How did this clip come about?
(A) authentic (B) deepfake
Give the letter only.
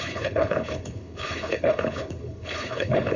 B